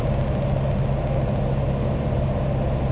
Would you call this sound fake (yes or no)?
no